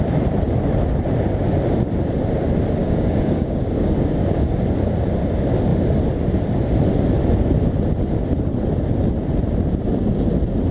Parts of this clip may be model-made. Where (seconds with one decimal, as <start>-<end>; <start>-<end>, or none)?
2.8-4.6